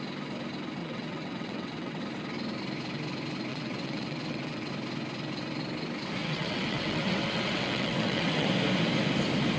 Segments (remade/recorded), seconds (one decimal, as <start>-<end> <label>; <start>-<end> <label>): 0.0-0.8 recorded; 0.8-2.0 remade; 2.0-3.5 recorded; 3.5-4.7 remade; 4.7-6.2 recorded; 6.2-8.5 remade; 8.5-9.6 recorded